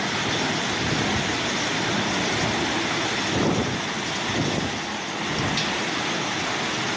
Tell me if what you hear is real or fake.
real